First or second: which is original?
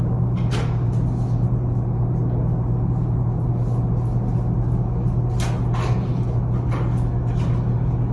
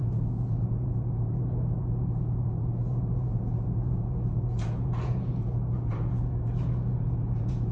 first